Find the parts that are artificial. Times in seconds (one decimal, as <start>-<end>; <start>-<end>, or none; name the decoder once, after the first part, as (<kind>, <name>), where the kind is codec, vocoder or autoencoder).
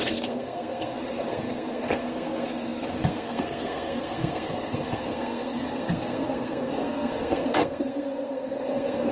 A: 0.0-9.1 (codec, SNAC)